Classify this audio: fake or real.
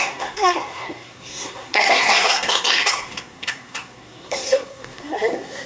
fake